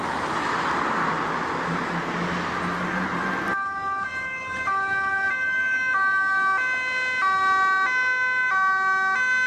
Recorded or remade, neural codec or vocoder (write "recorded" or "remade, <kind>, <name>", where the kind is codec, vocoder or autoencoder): recorded